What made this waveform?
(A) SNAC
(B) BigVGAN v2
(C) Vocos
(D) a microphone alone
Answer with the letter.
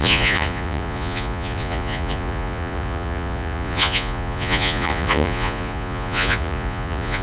C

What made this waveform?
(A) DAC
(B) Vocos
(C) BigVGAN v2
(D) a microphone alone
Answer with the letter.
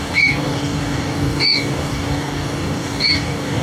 A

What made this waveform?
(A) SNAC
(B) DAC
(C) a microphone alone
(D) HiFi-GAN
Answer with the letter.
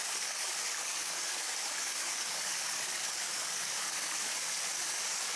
B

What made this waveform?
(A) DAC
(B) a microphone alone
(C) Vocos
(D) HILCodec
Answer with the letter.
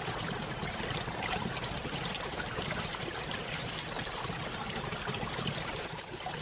B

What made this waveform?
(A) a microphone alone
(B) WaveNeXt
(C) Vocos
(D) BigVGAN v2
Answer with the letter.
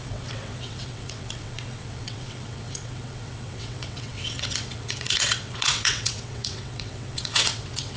B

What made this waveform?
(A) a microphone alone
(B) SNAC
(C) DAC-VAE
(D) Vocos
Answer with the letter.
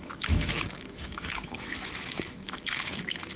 C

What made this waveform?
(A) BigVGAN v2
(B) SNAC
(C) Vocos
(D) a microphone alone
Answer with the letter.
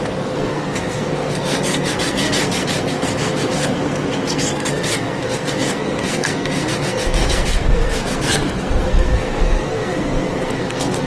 B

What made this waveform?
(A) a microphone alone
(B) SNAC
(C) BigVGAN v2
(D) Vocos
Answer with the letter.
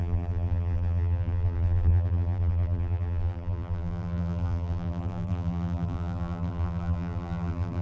C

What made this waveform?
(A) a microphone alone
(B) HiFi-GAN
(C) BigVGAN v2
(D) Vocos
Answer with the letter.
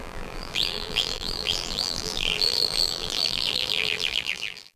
C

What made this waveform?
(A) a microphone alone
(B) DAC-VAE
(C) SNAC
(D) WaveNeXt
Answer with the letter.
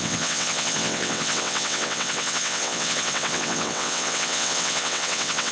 D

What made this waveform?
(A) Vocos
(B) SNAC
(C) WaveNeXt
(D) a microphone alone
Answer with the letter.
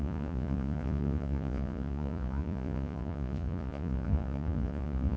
A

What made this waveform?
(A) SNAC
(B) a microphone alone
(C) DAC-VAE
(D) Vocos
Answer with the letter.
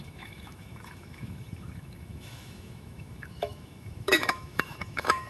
C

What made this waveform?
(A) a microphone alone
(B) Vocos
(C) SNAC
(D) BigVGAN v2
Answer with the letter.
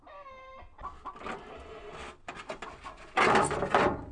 A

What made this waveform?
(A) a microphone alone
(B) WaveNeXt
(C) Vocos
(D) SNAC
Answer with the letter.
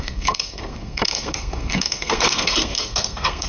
D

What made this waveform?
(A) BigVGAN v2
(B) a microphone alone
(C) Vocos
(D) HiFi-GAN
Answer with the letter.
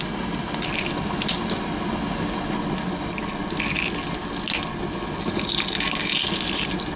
B